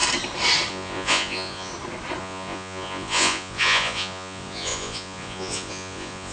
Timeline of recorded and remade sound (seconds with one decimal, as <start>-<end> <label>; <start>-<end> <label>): 0.0-0.7 recorded; 0.7-1.7 remade; 1.7-2.2 recorded; 2.2-6.3 remade